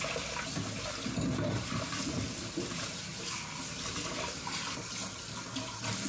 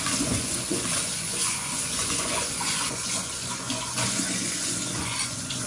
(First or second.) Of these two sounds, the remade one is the second